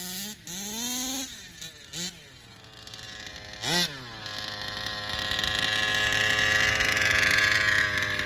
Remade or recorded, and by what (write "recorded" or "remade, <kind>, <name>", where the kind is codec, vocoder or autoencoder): recorded